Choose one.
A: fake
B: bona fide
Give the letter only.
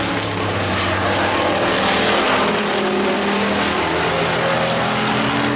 B